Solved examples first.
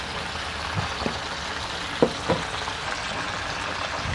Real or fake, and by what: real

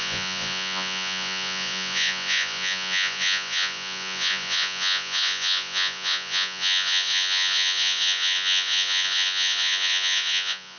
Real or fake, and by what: fake, vocoder, Vocos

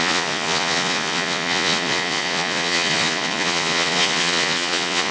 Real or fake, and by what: fake, vocoder, Vocos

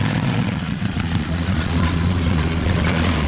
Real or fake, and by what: fake, vocoder, Vocos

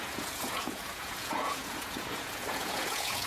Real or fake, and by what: fake, vocoder, Vocos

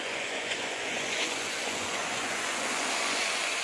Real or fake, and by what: fake, vocoder, Vocos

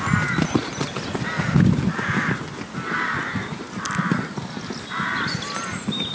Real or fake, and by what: real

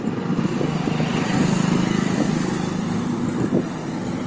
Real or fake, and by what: real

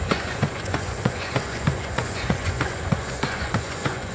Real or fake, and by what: fake, vocoder, Vocos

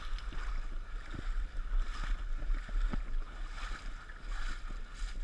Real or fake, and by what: real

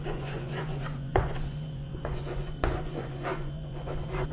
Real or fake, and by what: fake, vocoder, Vocos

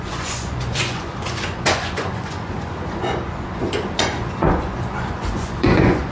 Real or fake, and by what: fake, vocoder, Vocos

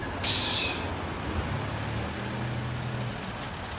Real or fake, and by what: real